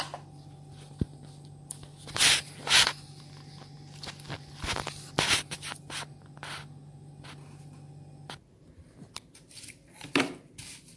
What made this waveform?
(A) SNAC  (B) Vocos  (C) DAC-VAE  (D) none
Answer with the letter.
D